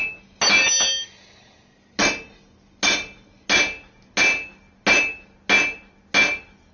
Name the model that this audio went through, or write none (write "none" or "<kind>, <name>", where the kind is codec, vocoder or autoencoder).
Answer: none